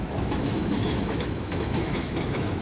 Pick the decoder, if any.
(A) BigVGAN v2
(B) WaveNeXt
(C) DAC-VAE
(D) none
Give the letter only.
C